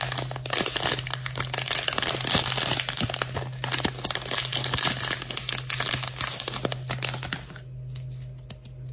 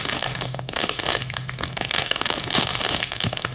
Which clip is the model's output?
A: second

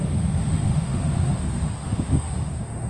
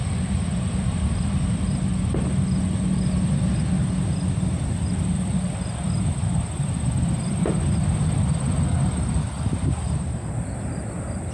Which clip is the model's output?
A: first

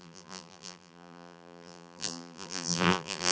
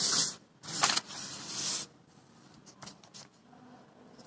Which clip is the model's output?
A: first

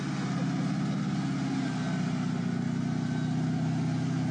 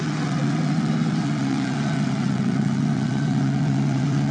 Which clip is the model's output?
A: second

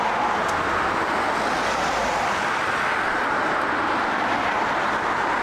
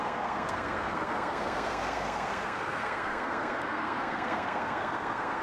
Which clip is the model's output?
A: second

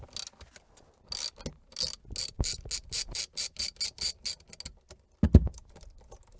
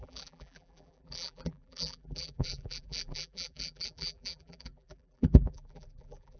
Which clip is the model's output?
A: second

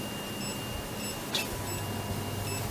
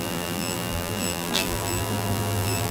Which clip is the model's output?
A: second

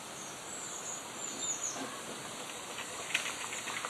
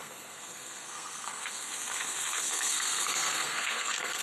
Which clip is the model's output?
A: second